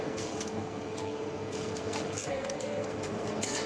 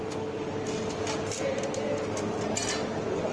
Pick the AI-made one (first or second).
first